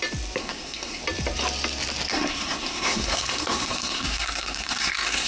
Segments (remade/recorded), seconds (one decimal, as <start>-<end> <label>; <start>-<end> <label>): 0.0-0.4 recorded; 0.4-1.0 remade; 1.0-2.1 recorded; 2.1-5.3 remade